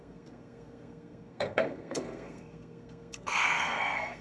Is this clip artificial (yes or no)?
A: yes